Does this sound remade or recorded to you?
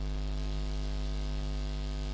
recorded